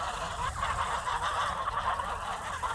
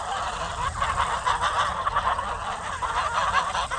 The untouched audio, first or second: second